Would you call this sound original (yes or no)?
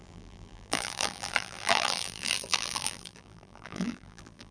no